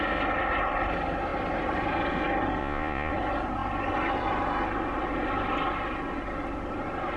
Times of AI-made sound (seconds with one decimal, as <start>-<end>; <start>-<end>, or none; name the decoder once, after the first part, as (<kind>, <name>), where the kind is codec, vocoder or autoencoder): 2.6-3.1 (vocoder, Vocos)